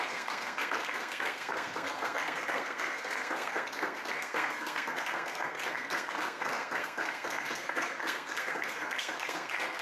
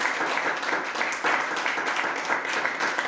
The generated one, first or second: first